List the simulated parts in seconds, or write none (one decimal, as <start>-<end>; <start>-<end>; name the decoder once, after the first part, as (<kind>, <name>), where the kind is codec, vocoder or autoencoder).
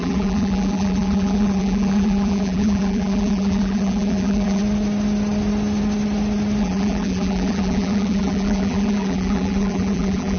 0.0-4.6 (vocoder, BigVGAN v2); 6.6-10.4